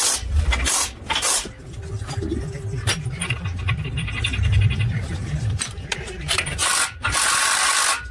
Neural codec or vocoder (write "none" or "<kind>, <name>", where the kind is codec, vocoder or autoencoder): none